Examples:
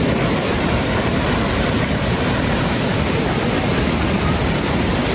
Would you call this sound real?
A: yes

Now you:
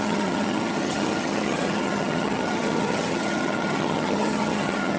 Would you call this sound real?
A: no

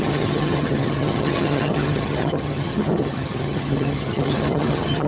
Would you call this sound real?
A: no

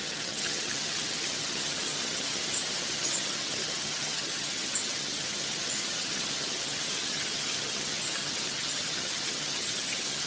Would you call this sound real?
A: no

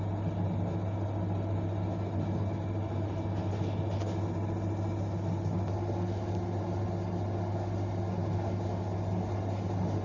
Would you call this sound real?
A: yes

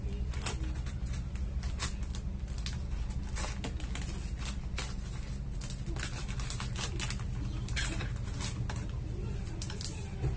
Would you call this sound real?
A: yes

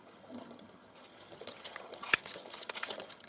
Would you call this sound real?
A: no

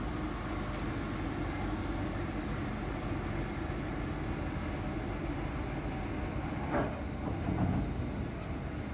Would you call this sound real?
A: yes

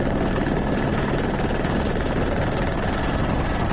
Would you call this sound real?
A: yes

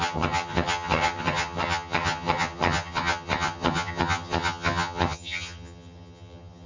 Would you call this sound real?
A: no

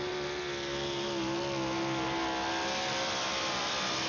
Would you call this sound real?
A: yes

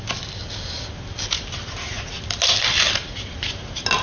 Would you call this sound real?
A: yes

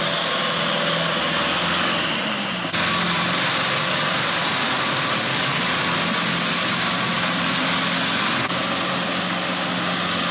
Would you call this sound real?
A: yes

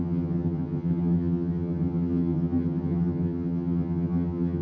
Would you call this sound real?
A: no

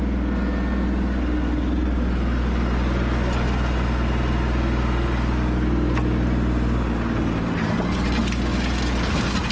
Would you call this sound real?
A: yes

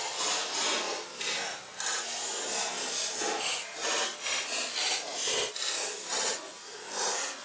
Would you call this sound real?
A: yes